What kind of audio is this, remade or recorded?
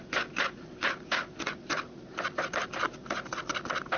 recorded